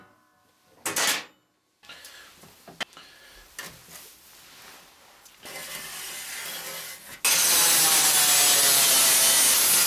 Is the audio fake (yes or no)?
no